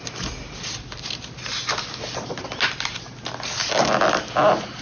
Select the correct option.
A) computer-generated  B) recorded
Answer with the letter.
B